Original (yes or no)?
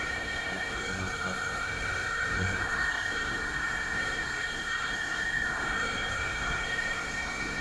no